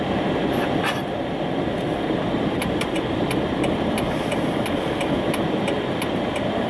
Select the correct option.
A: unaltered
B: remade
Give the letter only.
B